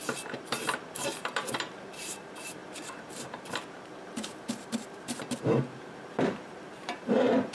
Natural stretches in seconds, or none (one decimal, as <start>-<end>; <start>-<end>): none